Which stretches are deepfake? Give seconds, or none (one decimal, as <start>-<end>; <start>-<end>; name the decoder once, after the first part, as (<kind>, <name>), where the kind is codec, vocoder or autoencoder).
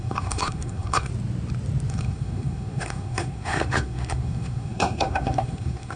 0.0-1.1 (codec, SNAC); 1.9-6.0